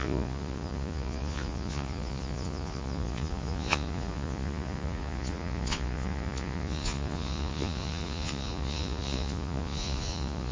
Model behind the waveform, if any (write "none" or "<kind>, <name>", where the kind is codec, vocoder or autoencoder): vocoder, Vocos